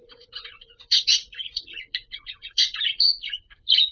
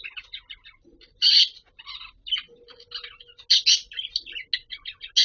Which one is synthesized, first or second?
first